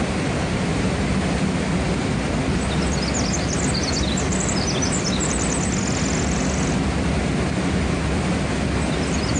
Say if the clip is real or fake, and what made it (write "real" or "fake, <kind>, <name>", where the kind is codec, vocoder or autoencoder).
real